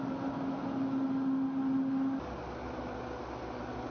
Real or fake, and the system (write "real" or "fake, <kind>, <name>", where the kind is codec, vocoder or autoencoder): real